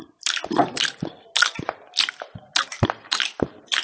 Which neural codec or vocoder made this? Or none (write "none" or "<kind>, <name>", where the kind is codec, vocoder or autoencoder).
none